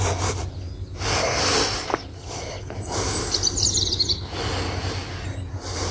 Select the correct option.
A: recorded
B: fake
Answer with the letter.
A